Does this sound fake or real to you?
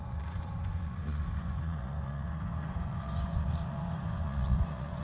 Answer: fake